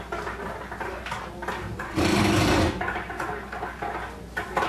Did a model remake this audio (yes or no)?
no